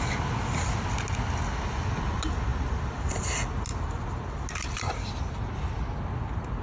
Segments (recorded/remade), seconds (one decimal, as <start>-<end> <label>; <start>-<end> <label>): 0.0-6.6 recorded

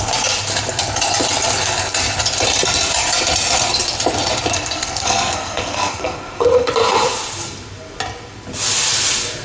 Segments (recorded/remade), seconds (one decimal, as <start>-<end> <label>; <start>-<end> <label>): 0.0-4.5 recorded; 4.5-6.7 remade; 6.7-9.4 recorded

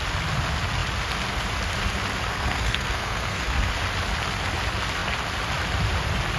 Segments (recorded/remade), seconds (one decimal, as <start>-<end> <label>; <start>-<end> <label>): 0.0-2.3 recorded; 2.3-3.7 remade; 3.7-6.4 recorded

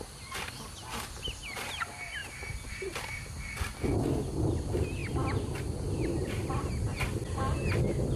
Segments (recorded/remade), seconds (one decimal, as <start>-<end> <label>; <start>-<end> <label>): 0.0-8.2 recorded

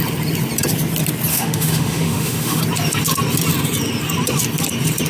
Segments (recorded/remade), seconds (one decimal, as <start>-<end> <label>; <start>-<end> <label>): 0.0-1.3 recorded; 1.3-2.6 remade; 2.6-5.1 recorded